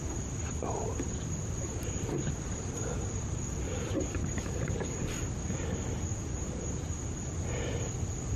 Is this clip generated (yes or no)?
no